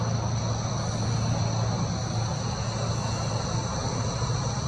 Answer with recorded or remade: recorded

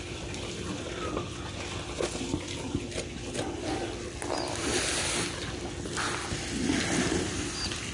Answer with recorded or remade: recorded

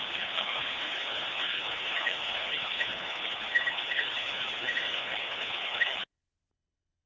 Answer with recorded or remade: remade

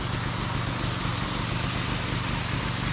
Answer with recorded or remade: recorded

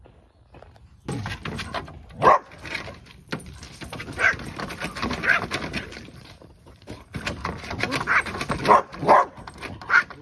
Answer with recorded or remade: recorded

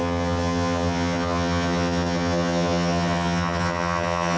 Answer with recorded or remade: remade